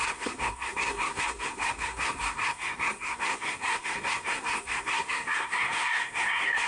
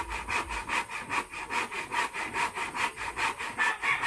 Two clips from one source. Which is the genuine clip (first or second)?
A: second